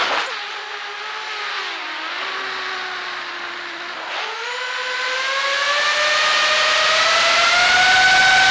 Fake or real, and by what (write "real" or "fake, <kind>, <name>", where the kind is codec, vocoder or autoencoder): real